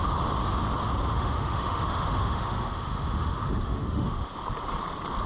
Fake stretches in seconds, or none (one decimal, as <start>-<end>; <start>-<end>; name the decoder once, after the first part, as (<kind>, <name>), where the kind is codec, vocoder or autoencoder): 1.1-4.3 (autoencoder, DAC-VAE)